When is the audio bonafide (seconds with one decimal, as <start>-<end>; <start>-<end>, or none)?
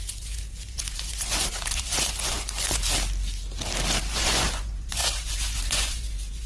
2.8-4.0